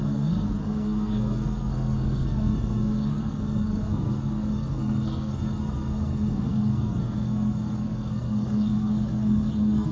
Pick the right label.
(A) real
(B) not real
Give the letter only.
B